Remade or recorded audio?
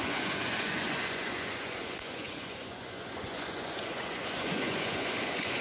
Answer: remade